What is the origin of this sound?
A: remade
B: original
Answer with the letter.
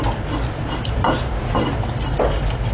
B